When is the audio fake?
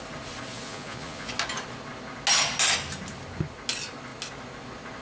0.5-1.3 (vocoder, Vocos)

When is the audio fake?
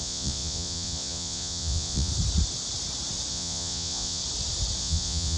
0.0-2.1 (vocoder, Vocos); 3.3-4.2; 4.8-5.4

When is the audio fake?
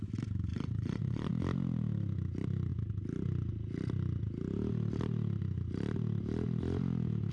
0.5-1.3 (vocoder, Vocos)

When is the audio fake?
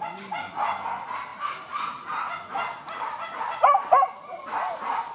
none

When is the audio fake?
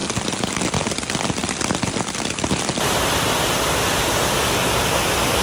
none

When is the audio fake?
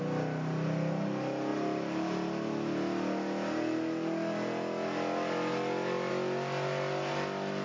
none